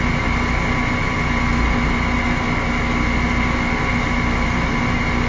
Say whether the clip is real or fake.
real